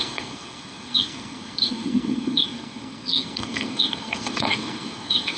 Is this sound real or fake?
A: fake